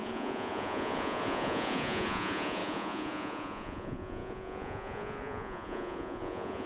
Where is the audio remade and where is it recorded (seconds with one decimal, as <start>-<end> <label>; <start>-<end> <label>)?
0.0-6.7 remade